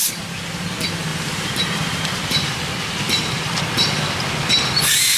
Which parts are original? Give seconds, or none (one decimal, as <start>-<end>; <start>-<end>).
0.0-1.1; 3.6-5.2